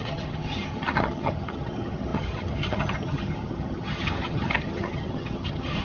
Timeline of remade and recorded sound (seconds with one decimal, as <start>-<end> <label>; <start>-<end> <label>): 0.0-5.8 remade